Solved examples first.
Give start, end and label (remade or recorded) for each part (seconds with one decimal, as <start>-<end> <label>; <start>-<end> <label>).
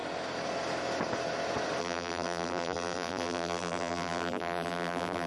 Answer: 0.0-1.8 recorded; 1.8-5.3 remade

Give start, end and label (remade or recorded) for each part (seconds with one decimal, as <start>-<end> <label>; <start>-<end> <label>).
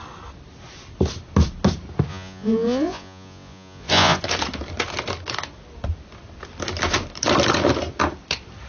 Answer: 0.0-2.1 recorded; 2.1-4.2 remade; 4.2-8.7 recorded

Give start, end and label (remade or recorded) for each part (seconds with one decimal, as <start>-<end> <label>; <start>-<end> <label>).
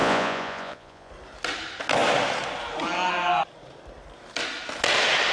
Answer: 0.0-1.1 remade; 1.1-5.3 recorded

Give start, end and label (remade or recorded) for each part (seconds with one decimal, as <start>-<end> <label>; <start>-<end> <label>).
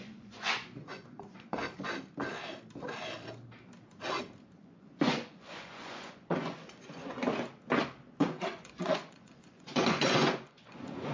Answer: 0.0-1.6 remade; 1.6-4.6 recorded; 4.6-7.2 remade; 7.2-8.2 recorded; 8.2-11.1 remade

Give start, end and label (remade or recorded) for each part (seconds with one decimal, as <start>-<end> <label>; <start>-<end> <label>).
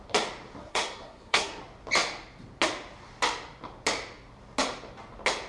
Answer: 0.0-0.6 recorded; 0.6-1.6 remade; 1.6-5.5 recorded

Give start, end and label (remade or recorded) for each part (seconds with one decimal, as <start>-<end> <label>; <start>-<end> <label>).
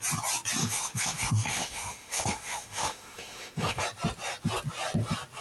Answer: 0.0-0.6 recorded; 0.6-3.8 remade; 3.8-5.4 recorded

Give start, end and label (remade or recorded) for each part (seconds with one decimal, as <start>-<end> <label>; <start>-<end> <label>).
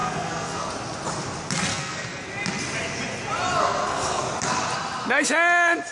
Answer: 0.0-0.7 remade; 0.7-1.7 recorded; 1.7-2.3 remade; 2.3-3.6 recorded; 3.6-4.2 remade; 4.2-5.9 recorded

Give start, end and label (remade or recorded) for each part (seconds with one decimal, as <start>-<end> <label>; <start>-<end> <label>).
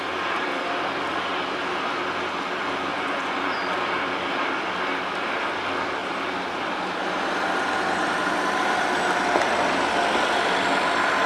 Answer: 0.0-2.9 recorded; 2.9-3.9 remade; 3.9-11.3 recorded